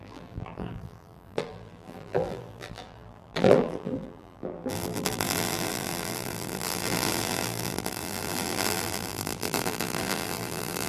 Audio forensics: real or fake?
fake